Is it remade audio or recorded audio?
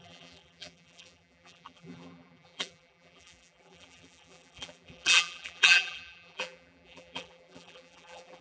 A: remade